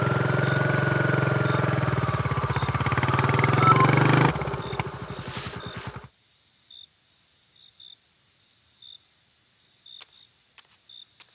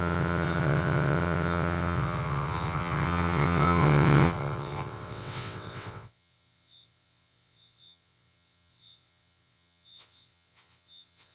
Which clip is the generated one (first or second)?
second